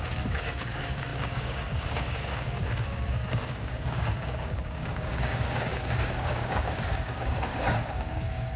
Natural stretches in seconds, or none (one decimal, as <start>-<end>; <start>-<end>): none